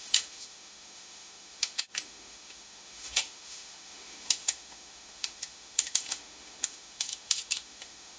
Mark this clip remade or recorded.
remade